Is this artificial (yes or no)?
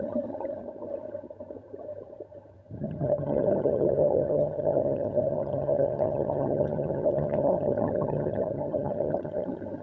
yes